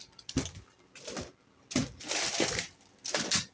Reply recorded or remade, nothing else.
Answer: recorded